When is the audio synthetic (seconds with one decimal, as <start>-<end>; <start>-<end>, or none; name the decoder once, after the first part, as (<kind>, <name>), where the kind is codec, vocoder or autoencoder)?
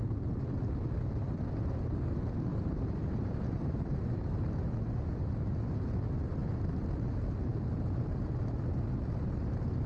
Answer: 2.5-5.3 (vocoder, BigVGAN v2)